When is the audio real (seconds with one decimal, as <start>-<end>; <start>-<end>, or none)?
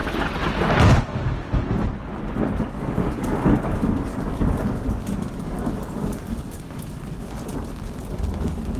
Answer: 0.0-2.6; 7.5-8.1